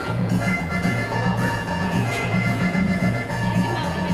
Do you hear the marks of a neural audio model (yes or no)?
yes